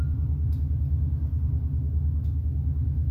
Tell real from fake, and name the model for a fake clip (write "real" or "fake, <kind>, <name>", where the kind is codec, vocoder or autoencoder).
real